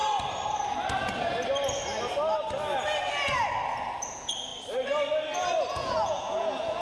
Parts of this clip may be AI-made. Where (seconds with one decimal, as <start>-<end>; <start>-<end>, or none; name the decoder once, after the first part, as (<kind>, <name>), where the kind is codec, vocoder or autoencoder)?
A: 4.1-4.5 (vocoder, Vocos); 5.7-6.8